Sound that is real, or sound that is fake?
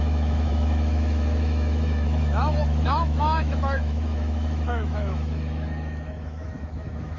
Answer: fake